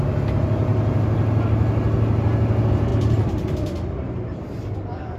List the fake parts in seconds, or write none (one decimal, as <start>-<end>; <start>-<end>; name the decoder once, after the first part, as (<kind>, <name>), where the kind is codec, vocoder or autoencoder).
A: 2.9-4.0 (vocoder, BigVGAN v2)